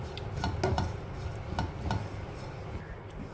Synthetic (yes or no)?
no